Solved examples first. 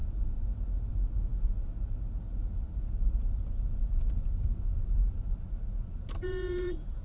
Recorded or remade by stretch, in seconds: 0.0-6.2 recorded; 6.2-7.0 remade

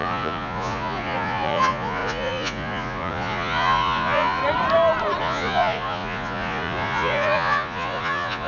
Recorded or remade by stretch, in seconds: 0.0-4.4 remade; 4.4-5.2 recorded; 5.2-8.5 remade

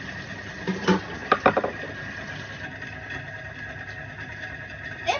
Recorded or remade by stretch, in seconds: 0.0-5.2 recorded

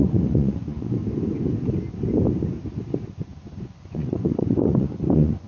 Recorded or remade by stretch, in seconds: 0.0-1.0 remade; 1.0-3.2 recorded; 3.2-5.5 remade

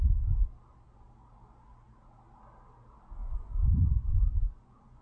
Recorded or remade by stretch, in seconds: 0.0-3.2 recorded; 3.2-5.0 remade

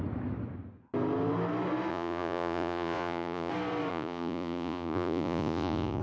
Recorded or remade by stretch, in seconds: 0.0-1.9 recorded; 1.9-3.5 remade; 3.5-3.9 recorded; 3.9-6.0 remade